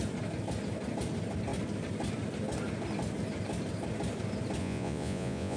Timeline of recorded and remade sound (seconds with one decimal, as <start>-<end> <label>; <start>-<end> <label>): 0.0-4.6 recorded; 4.6-5.6 remade